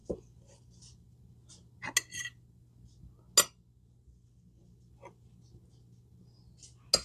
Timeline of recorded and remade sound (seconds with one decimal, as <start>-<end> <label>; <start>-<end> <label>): 0.0-7.0 recorded